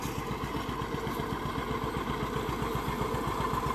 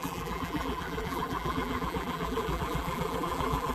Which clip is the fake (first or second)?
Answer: second